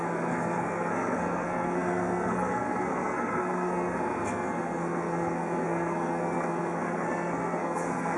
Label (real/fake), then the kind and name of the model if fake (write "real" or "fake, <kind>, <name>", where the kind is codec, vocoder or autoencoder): fake, codec, SNAC